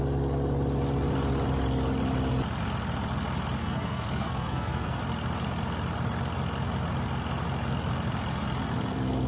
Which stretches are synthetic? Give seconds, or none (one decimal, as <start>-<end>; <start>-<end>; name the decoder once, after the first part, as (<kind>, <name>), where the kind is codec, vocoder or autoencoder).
3.6-5.0 (codec, SNAC)